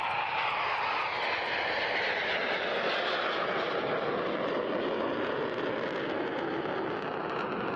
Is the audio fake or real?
real